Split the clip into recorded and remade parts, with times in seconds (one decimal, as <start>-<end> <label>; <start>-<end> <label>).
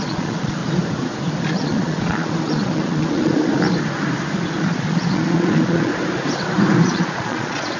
0.0-0.6 remade; 0.6-1.4 recorded; 1.4-3.5 remade; 3.5-4.6 recorded; 4.6-5.9 remade; 5.9-6.8 recorded; 6.8-7.8 remade